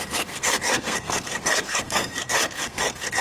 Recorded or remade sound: remade